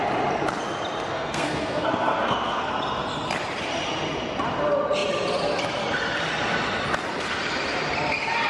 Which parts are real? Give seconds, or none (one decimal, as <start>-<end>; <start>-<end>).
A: 0.0-1.1; 2.7-8.5